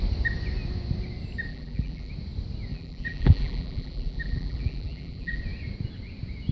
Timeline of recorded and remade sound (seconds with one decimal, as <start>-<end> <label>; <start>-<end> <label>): 0.0-1.5 recorded; 1.5-2.1 remade; 2.1-2.7 recorded; 2.7-5.4 remade; 5.4-6.5 recorded